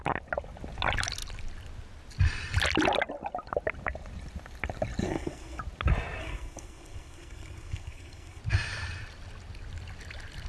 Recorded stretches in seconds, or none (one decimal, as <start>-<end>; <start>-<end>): 0.0-5.0; 5.6-6.2; 8.4-10.5